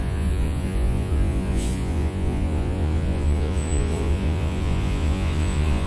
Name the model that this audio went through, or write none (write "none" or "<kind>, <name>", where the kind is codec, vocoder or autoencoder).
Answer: vocoder, Vocos